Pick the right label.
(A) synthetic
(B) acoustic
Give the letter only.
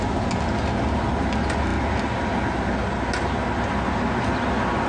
B